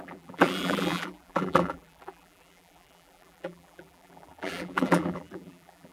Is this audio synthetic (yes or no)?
yes